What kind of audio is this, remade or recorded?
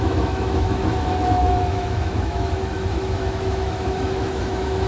remade